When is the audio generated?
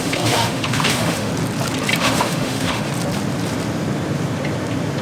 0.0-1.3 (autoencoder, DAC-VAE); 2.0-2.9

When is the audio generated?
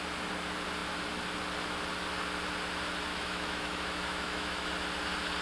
3.1-4.7 (autoencoder, DAC-VAE)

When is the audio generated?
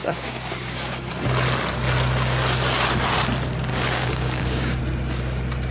0.0-1.1 (codec, DAC); 3.7-4.8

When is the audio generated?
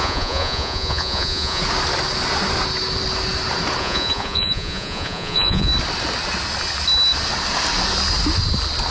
0.0-1.6 (vocoder, Vocos); 3.8-5.7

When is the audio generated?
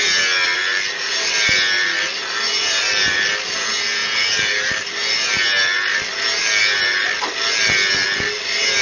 none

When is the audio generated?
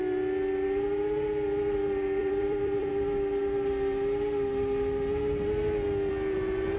2.2-2.9 (vocoder, BigVGAN v2)